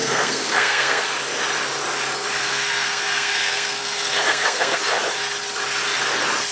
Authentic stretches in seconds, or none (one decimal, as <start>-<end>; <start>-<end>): 1.1-2.4; 4.8-6.5